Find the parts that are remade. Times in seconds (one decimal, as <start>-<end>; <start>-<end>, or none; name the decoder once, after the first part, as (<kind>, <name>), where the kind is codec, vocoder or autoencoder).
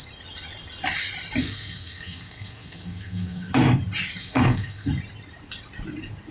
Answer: 1.4-3.5 (codec, SNAC); 4.2-4.9